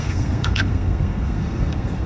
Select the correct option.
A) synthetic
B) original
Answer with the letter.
A